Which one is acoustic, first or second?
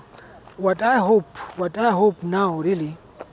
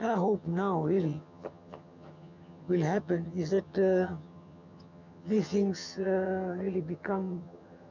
first